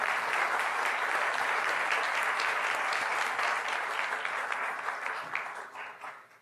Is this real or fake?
real